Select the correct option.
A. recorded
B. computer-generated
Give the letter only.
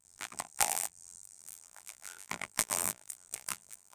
B